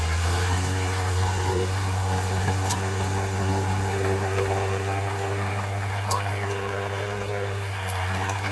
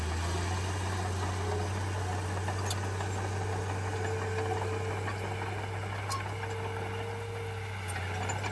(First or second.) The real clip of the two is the second